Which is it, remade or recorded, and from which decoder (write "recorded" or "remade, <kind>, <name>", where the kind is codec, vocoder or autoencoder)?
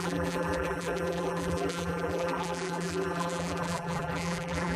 remade, vocoder, BigVGAN v2